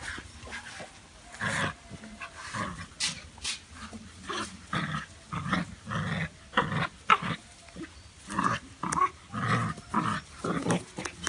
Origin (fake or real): real